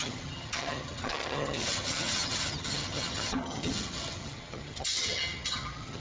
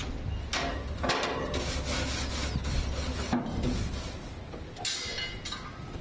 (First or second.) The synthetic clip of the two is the first